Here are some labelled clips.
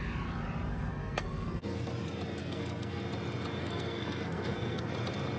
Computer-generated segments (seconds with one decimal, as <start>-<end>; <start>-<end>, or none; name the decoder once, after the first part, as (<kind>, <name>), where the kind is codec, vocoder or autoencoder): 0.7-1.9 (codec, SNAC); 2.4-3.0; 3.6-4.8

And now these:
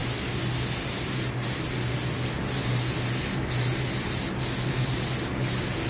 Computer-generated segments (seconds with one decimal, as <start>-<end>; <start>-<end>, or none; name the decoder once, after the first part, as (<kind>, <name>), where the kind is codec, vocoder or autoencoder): none

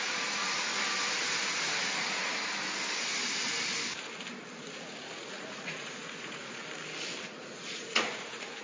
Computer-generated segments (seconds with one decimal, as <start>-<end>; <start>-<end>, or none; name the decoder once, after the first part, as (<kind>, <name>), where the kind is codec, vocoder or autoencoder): 0.0-0.7 (vocoder, Vocos); 1.8-2.2; 4.6-6.6; 7.2-8.6

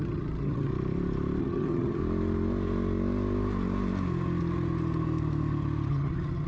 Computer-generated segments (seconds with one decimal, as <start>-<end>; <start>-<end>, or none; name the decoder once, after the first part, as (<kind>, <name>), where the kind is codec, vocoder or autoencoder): 0.0-0.7 (vocoder, HiFi-GAN); 1.4-2.0; 5.9-6.5

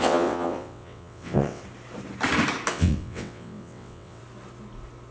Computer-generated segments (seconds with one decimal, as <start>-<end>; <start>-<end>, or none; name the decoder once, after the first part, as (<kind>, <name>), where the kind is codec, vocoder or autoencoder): 0.0-1.6 (vocoder, WaveNeXt); 2.7-4.2